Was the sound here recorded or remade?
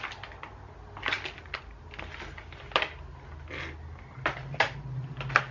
recorded